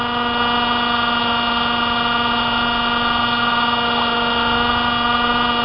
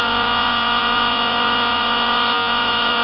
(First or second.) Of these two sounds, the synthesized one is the second